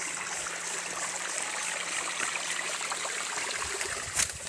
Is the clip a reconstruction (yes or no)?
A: no